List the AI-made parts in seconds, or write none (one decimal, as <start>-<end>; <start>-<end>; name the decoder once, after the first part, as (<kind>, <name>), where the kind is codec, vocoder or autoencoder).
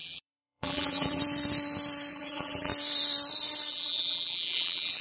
0.0-1.2 (vocoder, BigVGAN v2); 2.1-2.7; 3.7-5.0